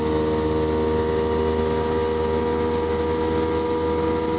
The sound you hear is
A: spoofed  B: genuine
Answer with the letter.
B